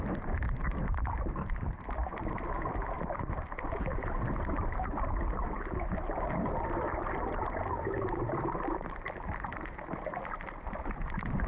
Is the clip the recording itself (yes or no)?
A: no